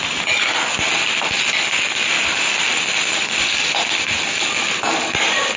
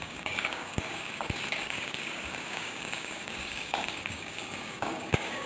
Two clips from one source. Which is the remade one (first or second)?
second